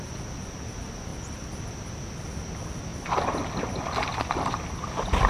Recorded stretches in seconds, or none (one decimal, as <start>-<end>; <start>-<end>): 0.0-1.1; 1.6-5.3